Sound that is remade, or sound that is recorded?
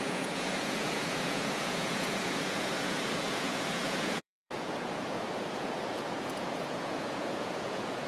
remade